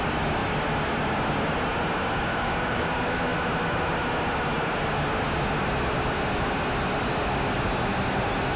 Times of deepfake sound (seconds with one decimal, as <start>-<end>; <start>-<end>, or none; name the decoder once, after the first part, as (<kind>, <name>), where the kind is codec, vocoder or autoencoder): 2.3-2.9 (codec, DAC)